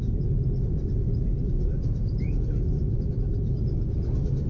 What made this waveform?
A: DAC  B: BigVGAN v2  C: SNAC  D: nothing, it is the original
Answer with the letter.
B